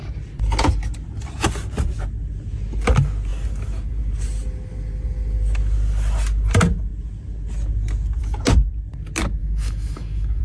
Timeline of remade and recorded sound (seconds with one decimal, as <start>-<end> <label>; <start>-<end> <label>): 0.0-9.4 recorded; 9.4-10.4 remade